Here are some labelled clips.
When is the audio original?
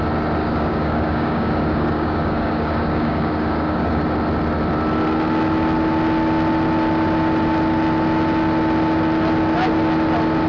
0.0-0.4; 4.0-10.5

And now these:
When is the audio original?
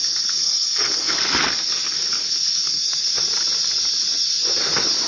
3.1-5.1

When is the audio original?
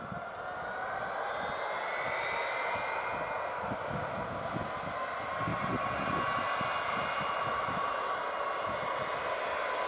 0.0-5.5; 6.2-9.9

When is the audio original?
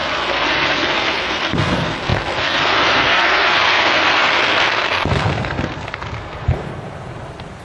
6.7-7.6